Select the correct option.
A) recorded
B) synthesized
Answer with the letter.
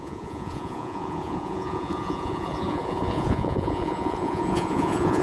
B